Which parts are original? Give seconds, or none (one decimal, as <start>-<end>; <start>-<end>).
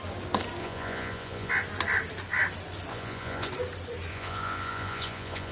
0.0-0.6; 1.5-2.9; 3.5-4.1